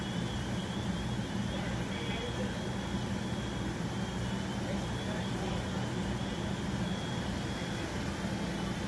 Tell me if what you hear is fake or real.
real